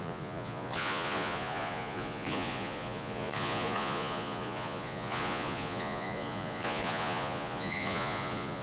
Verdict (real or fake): fake